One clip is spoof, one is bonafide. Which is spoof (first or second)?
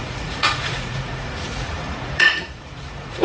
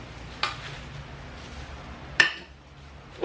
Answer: first